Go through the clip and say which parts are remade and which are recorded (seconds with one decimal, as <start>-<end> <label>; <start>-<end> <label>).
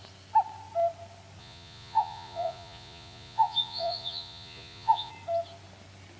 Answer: 0.0-1.4 recorded; 1.4-5.1 remade; 5.1-6.2 recorded